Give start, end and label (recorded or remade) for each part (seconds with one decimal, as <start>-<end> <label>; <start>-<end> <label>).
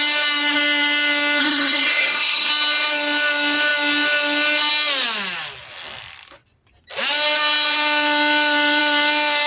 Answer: 0.0-1.4 recorded; 1.4-2.5 remade; 2.5-9.5 recorded